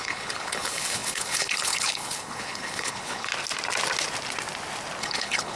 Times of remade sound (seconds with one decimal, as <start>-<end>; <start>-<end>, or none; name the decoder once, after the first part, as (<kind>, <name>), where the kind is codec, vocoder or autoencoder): 0.0-3.3 (codec, HILCodec); 5.0-5.6